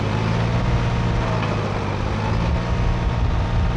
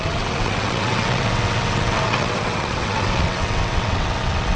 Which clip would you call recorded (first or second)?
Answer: first